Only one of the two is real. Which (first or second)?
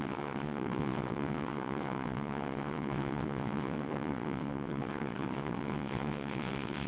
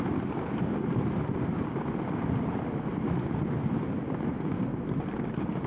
second